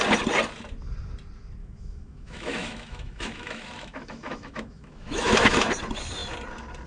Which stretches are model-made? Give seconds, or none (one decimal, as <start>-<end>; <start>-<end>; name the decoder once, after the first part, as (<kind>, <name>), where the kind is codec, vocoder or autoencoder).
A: 1.6-5.7 (autoencoder, DAC-VAE)

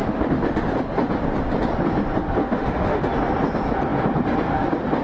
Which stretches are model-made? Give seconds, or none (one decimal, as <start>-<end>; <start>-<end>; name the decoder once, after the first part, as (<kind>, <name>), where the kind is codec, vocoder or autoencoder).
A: 2.4-3.0 (autoencoder, DAC-VAE)

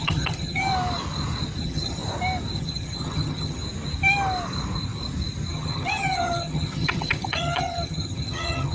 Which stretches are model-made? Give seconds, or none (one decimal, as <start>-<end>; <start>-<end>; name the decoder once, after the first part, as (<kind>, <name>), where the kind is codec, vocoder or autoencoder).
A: 0.0-0.7 (vocoder, HiFi-GAN); 1.6-2.0; 2.6-3.6; 5.5-8.7

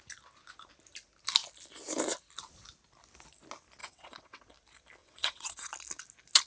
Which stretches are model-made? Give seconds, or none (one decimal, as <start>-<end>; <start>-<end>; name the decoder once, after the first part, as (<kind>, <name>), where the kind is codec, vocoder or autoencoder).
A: 3.8-4.4 (vocoder, WaveNeXt); 5.0-5.7

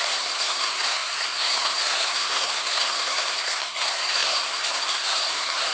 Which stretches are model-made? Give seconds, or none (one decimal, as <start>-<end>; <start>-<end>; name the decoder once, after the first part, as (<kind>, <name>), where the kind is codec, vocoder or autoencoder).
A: 0.0-5.7 (codec, SNAC)

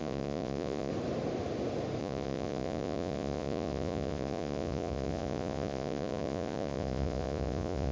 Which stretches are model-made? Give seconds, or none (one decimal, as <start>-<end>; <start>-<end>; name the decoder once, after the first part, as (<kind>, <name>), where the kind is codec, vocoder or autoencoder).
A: 0.0-0.9 (vocoder, Vocos); 2.0-7.9

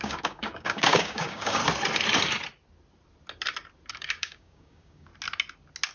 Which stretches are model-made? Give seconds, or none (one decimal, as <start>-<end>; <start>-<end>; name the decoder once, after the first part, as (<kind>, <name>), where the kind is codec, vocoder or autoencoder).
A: 0.0-1.6 (codec, DAC); 3.9-5.1